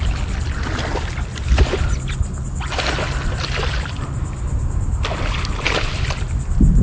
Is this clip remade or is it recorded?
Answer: recorded